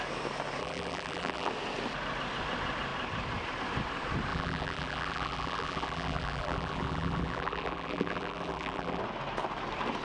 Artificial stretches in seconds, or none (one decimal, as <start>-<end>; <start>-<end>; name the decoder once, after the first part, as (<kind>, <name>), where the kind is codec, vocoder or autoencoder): 0.6-1.5 (vocoder, BigVGAN v2); 4.3-9.0